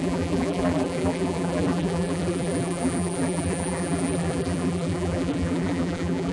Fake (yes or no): yes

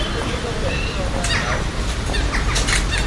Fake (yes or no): yes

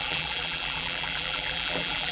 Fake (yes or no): yes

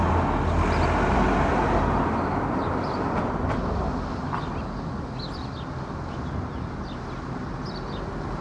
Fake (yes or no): no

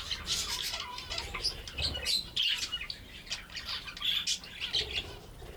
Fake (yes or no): no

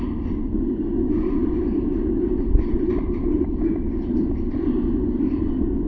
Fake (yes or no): yes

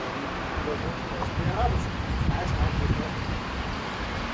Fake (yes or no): yes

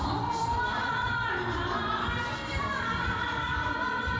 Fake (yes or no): yes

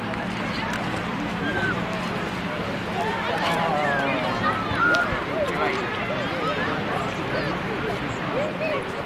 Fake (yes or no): no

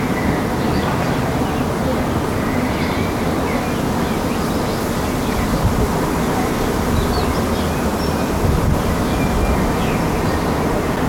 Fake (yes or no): no